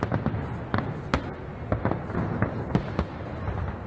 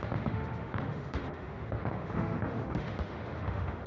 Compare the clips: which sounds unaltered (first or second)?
first